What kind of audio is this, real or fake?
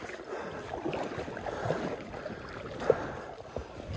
real